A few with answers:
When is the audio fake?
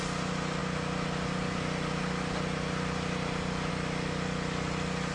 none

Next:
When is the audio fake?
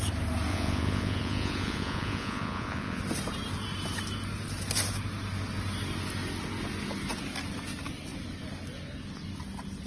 0.5-3.0 (vocoder, Vocos)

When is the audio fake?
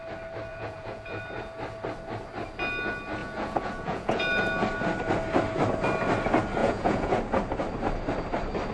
0.5-1.2 (vocoder, Vocos); 3.2-4.4; 6.6-7.2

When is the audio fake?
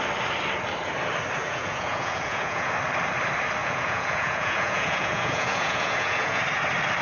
1.4-2.7 (vocoder, Vocos); 3.6-6.4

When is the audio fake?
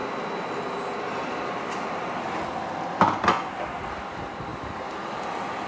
none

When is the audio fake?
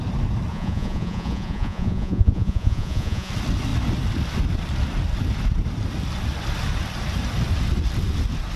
0.5-3.3 (vocoder, Vocos)